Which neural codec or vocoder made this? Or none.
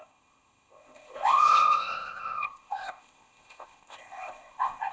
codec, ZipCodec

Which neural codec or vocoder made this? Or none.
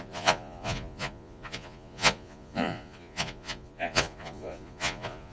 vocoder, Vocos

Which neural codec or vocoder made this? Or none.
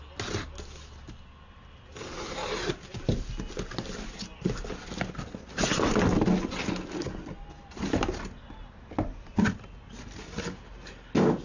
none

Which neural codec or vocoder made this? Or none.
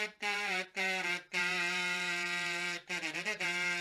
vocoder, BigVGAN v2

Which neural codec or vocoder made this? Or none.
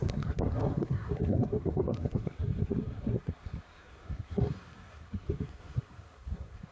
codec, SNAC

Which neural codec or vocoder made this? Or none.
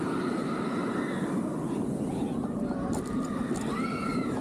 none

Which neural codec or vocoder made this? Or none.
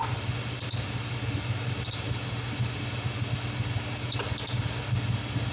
none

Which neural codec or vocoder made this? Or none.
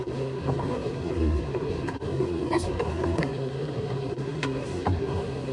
codec, SNAC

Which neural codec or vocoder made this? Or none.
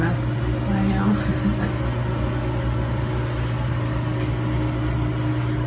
none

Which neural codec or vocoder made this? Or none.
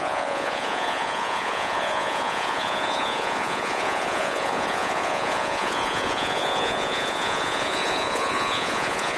vocoder, Vocos